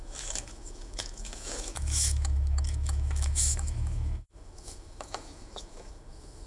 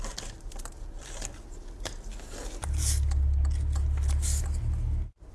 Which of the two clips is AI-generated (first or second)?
first